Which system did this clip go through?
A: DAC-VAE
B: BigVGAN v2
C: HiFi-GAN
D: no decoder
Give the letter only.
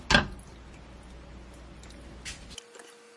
D